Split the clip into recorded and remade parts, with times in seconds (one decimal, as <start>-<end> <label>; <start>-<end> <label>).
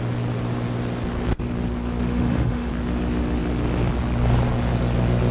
0.0-2.1 recorded; 2.1-2.7 remade; 2.7-5.3 recorded